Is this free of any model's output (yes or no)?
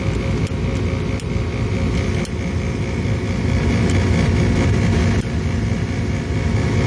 yes